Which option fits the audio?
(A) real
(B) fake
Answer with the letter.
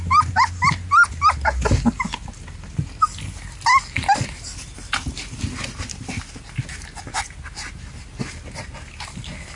A